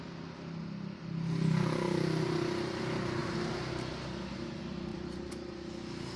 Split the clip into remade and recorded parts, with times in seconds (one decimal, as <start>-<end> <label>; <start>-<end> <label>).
0.0-3.2 recorded; 3.2-3.7 remade; 3.7-4.9 recorded; 4.9-5.5 remade; 5.5-6.2 recorded